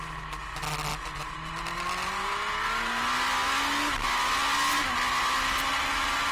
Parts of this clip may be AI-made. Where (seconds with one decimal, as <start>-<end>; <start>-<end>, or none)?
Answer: none